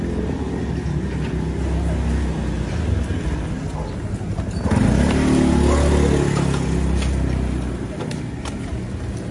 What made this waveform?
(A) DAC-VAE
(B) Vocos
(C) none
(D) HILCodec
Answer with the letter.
C